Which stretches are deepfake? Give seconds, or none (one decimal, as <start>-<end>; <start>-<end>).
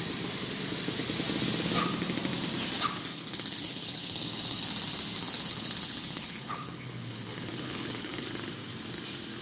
3.1-4.7; 5.2-8.3